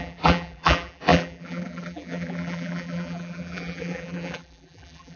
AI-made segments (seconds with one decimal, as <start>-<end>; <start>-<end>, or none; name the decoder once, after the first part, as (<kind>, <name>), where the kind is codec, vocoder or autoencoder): 0.0-5.2 (vocoder, BigVGAN v2)